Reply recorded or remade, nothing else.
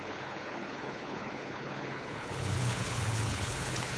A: remade